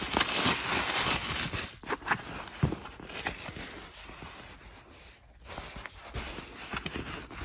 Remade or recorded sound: recorded